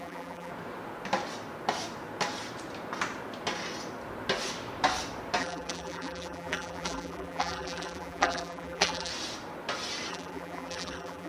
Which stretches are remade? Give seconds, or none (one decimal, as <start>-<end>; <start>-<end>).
0.0-0.5; 5.4-9.1; 10.1-11.3